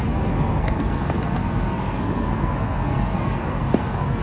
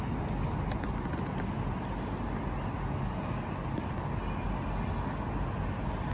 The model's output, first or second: first